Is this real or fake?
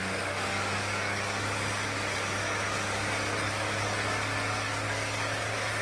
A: fake